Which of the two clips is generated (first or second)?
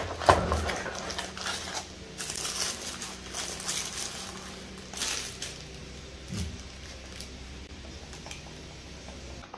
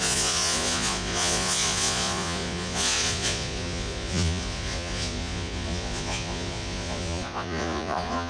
second